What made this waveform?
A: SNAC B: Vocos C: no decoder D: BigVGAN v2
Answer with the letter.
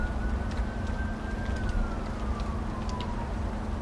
C